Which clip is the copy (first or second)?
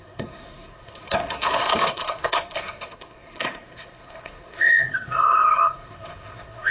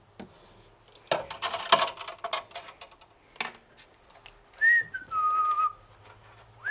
first